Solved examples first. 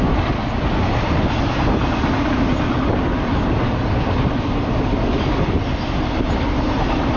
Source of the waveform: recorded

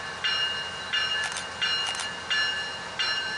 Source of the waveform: recorded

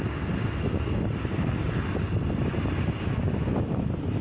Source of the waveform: recorded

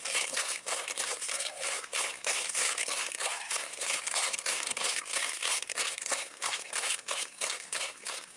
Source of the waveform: remade